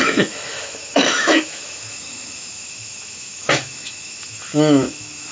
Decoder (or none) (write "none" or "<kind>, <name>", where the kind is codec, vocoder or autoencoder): autoencoder, DAC-VAE